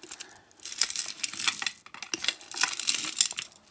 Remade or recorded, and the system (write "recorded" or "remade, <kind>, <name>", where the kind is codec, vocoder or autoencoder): recorded